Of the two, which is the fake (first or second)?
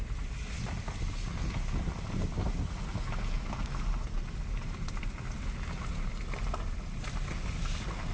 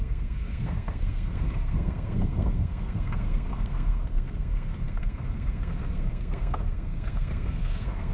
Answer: second